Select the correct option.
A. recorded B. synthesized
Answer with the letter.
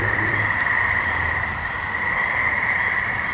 B